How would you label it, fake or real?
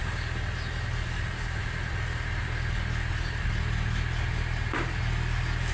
real